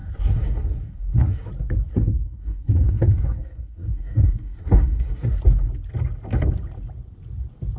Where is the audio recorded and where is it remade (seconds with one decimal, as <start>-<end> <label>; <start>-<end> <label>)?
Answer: 0.0-1.5 remade; 1.5-1.9 recorded; 1.9-5.4 remade; 5.4-7.8 recorded